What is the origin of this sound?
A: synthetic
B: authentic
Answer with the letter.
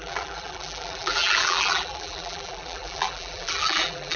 A